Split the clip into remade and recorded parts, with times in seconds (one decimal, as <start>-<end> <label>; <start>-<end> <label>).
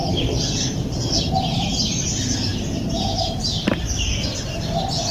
0.0-1.2 remade; 1.2-2.5 recorded; 2.5-3.9 remade; 3.9-5.1 recorded